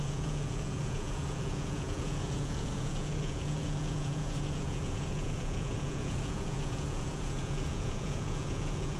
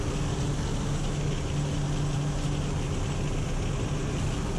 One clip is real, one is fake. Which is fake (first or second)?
first